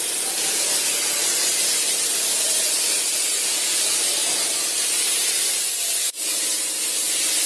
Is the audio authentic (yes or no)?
yes